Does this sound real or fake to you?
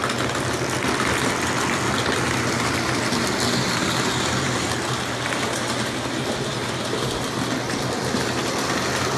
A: real